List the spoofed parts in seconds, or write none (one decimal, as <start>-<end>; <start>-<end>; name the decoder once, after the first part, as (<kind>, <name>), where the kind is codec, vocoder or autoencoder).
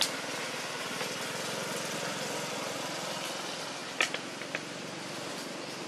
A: none